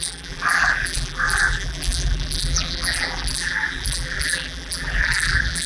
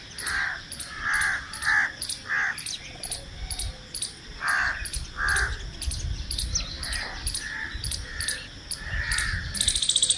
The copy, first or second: first